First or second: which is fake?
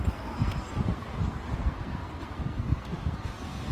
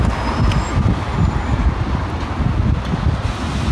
first